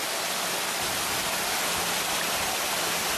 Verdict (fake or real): real